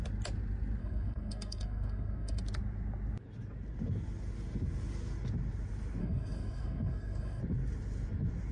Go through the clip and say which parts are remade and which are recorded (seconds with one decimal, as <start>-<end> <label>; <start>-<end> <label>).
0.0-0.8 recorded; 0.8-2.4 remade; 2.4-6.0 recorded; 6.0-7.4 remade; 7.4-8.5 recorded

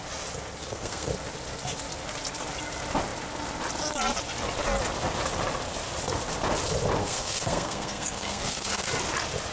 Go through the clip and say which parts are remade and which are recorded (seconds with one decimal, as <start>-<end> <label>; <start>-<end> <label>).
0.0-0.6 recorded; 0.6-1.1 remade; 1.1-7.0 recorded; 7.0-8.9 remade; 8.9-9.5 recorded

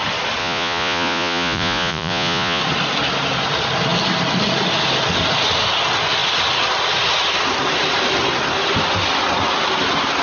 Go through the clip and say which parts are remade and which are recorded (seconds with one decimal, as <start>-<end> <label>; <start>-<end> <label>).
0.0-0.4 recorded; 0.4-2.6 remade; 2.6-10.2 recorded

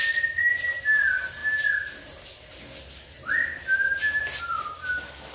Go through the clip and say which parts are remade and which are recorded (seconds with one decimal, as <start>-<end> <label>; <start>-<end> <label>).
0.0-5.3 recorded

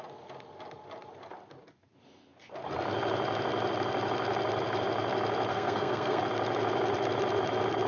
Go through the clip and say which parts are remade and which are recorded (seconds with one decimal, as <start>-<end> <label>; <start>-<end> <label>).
0.0-5.5 recorded; 5.5-6.2 remade; 6.2-7.9 recorded

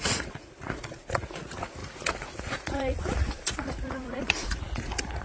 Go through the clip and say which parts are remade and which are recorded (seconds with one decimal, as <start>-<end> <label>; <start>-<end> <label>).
0.0-5.2 remade

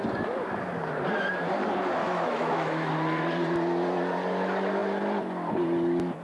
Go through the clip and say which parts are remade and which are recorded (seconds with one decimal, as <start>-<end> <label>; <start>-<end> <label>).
0.0-2.0 recorded; 2.0-2.9 remade; 2.9-6.2 recorded

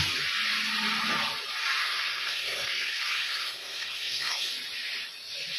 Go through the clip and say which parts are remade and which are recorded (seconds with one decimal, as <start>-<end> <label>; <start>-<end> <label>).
0.0-1.8 recorded; 1.8-4.5 remade; 4.5-5.6 recorded